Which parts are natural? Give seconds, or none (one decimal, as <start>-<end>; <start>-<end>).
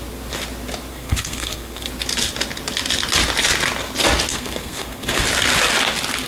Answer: 0.0-0.9; 1.9-4.3; 5.2-6.3